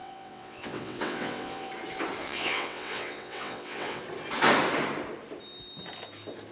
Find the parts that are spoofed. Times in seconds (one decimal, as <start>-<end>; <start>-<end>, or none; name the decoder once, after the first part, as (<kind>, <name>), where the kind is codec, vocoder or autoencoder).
0.0-1.7 (vocoder, WaveNeXt); 2.2-4.0